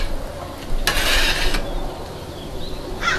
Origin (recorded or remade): recorded